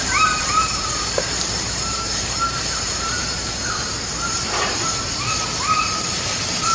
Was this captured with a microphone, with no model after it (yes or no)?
no